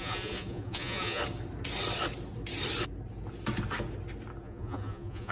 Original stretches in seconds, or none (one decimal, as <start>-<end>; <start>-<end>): 1.2-4.4